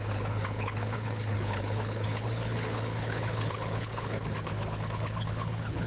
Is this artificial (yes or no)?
yes